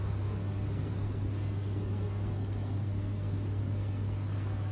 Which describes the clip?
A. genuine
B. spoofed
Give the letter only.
B